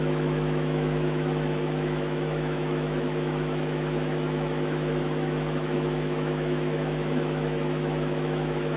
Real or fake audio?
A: fake